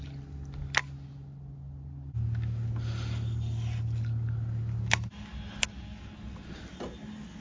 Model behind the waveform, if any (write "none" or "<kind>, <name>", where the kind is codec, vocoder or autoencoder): none